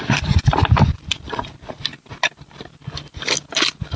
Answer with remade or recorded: recorded